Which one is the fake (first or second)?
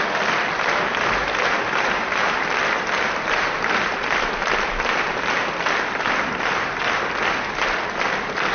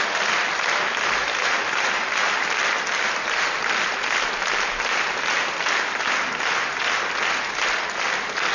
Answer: first